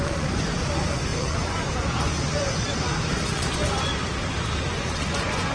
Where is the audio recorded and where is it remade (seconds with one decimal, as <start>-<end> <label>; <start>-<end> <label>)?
0.0-3.9 remade; 3.9-4.7 recorded; 4.7-5.5 remade